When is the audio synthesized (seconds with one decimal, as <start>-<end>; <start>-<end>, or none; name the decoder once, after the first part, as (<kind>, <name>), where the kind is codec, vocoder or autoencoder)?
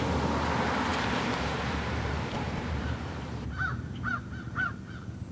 0.9-4.1 (vocoder, BigVGAN v2)